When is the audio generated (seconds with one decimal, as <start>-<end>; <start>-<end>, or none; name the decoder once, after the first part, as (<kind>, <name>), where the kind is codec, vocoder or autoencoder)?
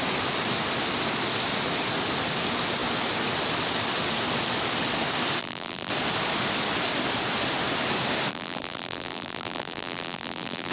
5.4-5.9 (vocoder, BigVGAN v2); 8.3-10.7